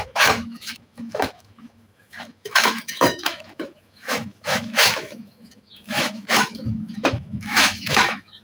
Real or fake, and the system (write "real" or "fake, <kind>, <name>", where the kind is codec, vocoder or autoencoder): fake, autoencoder, DAC-VAE